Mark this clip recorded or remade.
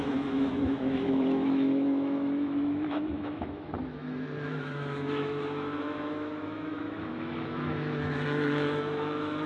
remade